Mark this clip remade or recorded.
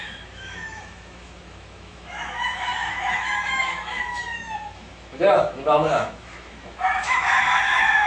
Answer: remade